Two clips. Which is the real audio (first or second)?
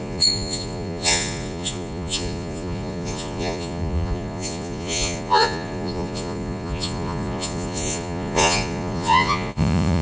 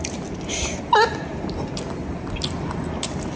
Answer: second